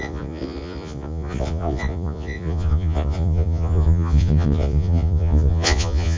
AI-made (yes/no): yes